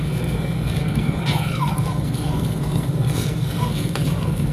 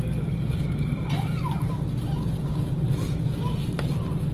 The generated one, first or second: first